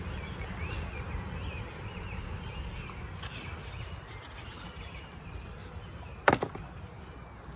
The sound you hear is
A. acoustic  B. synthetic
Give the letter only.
A